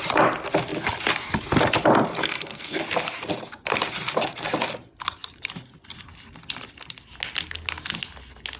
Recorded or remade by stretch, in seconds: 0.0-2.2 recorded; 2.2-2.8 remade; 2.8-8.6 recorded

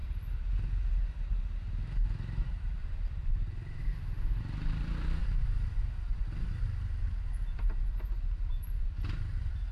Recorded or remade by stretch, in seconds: 0.0-3.8 recorded; 3.8-4.4 remade; 4.4-9.7 recorded

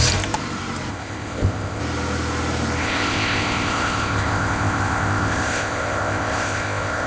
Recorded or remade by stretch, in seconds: 0.0-0.9 recorded; 0.9-1.8 remade; 1.8-2.8 recorded; 2.8-7.1 remade

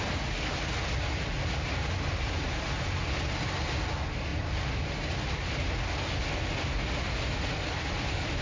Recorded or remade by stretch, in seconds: 0.0-8.4 recorded

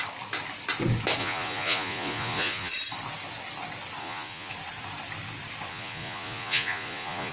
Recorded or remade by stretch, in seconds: 0.0-1.2 recorded; 1.2-2.7 remade; 2.7-4.0 recorded; 4.0-4.5 remade; 4.5-5.7 recorded; 5.7-7.3 remade